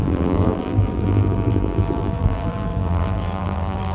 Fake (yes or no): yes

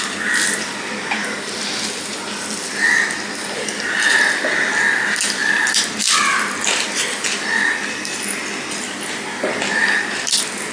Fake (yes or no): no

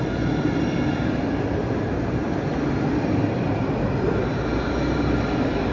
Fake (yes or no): no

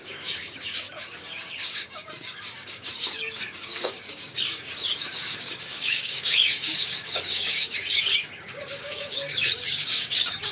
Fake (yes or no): yes